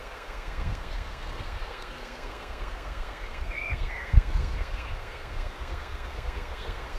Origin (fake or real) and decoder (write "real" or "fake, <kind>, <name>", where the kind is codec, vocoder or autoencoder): fake, codec, SNAC